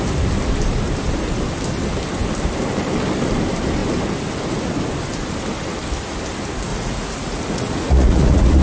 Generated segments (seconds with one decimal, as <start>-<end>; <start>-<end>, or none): 6.7-8.6